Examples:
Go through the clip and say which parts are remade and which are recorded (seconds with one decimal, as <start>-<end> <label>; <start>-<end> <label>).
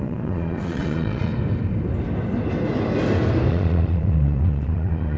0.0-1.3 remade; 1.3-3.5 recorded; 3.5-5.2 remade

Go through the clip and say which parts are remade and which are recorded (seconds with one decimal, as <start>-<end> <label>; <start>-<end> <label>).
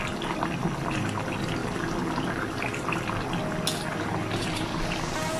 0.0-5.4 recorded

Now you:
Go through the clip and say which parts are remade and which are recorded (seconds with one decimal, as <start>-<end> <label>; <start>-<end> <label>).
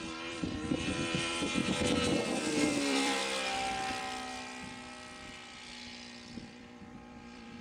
0.0-1.6 remade; 1.6-2.6 recorded; 2.6-3.2 remade; 3.2-6.4 recorded; 6.4-7.6 remade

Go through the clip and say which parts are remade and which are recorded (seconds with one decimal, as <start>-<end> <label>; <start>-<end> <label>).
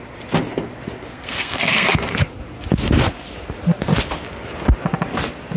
0.0-1.1 recorded; 1.1-2.1 remade; 2.1-5.6 recorded